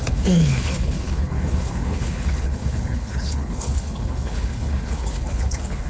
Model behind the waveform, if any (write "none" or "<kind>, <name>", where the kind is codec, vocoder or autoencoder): codec, HILCodec